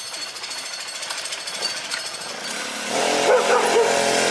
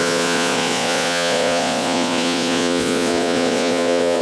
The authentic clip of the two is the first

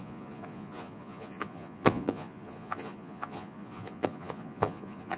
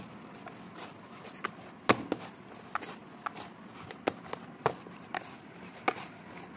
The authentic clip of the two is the second